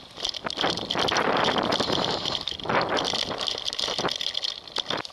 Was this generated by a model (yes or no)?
no